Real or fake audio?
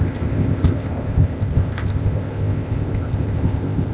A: fake